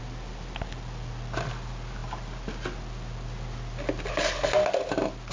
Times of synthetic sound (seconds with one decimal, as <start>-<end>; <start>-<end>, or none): none